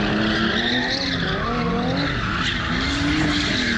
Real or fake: real